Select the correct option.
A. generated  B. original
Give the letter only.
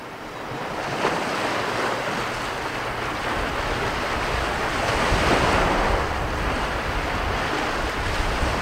B